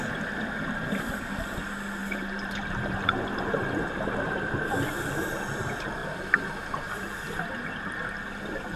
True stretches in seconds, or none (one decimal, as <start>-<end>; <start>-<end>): 0.0-2.0; 4.8-8.8